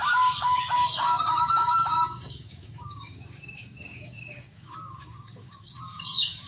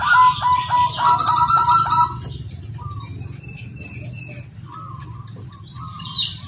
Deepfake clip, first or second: first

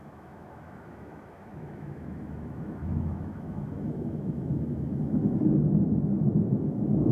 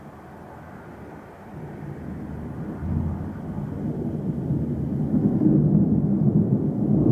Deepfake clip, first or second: first